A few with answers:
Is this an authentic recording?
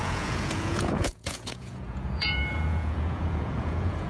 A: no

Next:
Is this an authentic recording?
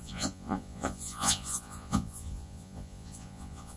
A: no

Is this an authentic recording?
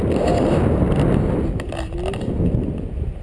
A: yes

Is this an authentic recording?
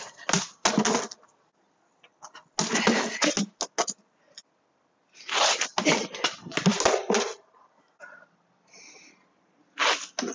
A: yes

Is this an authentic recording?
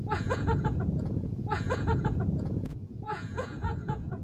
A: no